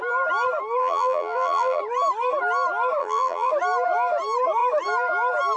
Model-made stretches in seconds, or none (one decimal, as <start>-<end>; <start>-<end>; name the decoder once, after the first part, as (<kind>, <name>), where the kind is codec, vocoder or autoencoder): 0.8-1.8 (vocoder, BigVGAN v2); 3.0-3.5